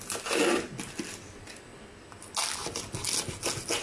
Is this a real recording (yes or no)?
yes